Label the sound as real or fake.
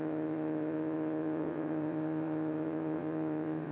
fake